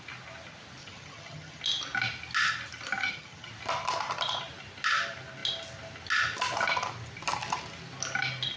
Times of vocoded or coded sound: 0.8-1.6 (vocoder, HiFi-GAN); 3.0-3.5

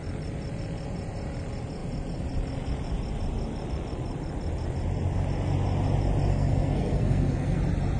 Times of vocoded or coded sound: 6.3-7.6 (codec, SNAC)

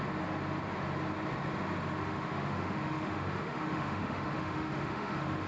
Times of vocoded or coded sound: 2.0-5.5 (autoencoder, DAC-VAE)

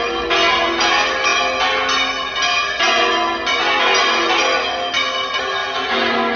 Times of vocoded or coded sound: none

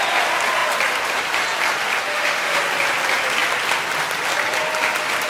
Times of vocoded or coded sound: 2.1-2.6 (autoencoder, DAC-VAE)